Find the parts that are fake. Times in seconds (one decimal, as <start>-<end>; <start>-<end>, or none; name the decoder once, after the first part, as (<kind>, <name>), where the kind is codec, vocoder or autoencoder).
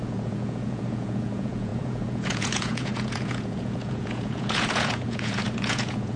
0.0-6.2 (vocoder, Vocos)